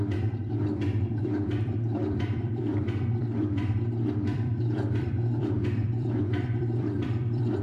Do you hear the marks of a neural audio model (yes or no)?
yes